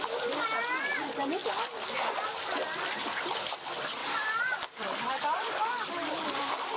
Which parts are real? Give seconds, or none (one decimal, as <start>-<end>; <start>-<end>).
0.0-3.0; 3.5-4.0